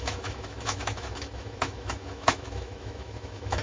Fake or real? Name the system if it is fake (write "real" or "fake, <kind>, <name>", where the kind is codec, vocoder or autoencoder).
fake, autoencoder, DAC-VAE